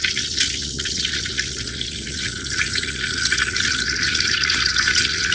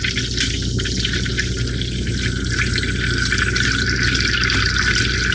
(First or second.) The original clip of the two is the second